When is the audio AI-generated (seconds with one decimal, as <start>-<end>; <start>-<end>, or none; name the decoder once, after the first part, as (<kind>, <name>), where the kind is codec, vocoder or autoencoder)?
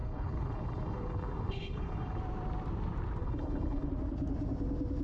0.0-2.2 (codec, HILCodec); 3.2-3.9